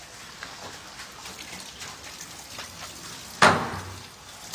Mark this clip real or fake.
real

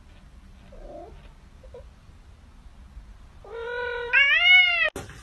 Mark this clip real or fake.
real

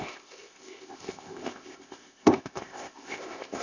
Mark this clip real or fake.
fake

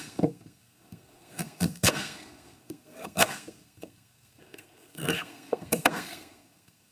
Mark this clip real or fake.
fake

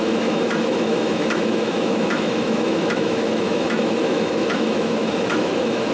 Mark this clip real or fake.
fake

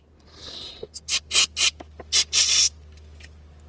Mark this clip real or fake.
real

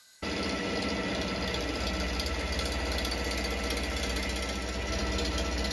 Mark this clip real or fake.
real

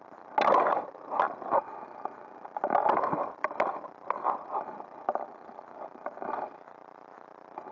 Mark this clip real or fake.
real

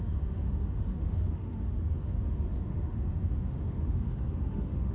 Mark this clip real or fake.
fake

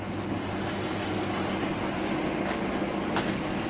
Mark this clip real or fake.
real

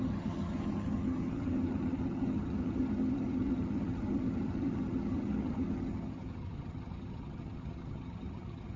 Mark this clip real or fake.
fake